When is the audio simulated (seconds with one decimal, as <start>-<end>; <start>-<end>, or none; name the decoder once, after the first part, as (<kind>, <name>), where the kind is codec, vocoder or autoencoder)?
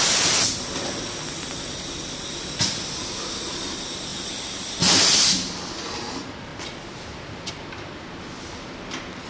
4.1-5.7 (vocoder, BigVGAN v2); 6.5-7.5